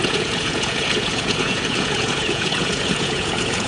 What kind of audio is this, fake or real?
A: fake